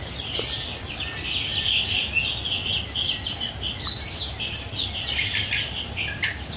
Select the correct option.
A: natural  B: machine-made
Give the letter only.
A